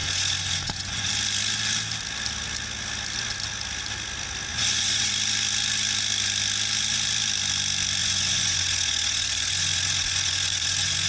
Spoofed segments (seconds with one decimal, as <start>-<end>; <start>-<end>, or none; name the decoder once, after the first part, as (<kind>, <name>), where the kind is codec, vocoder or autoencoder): 0.0-1.1 (vocoder, Vocos); 4.5-5.1; 8.0-11.1